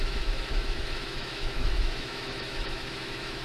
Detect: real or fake fake